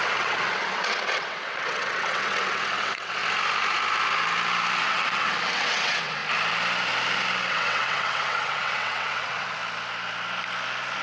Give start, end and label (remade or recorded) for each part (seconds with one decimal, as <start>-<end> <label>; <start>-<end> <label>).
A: 0.0-3.2 remade; 3.2-4.8 recorded; 4.8-6.2 remade; 6.2-7.5 recorded; 7.5-9.6 remade; 9.6-11.0 recorded